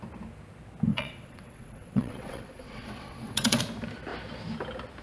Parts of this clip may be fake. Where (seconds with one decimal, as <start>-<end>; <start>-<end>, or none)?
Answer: 0.9-3.6